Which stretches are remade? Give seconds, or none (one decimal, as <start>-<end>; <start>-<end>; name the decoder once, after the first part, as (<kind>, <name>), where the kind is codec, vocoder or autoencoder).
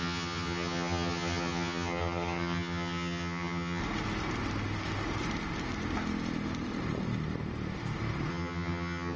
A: 0.0-3.8 (vocoder, HiFi-GAN); 8.3-9.2